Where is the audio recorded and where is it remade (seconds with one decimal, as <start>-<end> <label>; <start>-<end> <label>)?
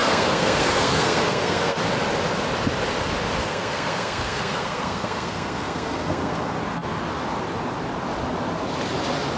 0.0-1.8 remade; 1.8-3.4 recorded; 3.4-6.5 remade; 6.5-9.4 recorded